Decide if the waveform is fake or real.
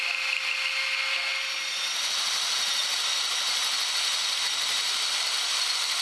real